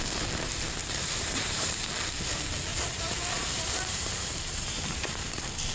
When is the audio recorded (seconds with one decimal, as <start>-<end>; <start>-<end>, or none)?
0.0-0.8; 1.9-2.7; 5.3-5.7